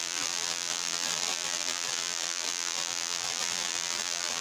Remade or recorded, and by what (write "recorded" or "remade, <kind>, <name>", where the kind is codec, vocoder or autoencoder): remade, vocoder, BigVGAN v2